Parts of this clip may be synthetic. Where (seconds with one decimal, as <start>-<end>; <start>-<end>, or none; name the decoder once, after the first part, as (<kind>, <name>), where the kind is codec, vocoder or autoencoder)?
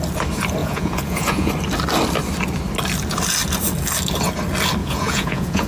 0.6-1.5 (vocoder, Vocos); 4.8-5.7